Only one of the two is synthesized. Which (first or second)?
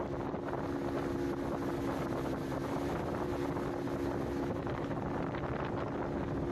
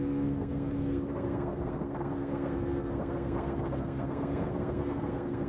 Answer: second